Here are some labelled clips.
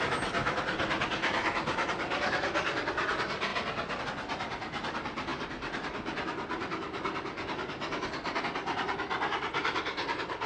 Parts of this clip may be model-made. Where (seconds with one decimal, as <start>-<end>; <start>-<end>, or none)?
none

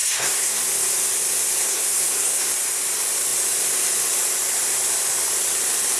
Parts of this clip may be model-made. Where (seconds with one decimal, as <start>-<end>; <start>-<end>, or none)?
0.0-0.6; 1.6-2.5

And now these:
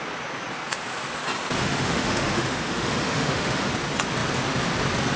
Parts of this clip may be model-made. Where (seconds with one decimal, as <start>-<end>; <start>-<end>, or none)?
1.6-3.6